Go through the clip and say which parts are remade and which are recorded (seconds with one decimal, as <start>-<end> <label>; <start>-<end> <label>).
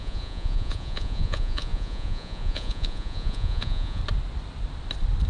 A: 0.0-4.0 remade; 4.0-5.3 recorded